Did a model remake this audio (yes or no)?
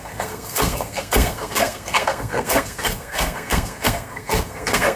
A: yes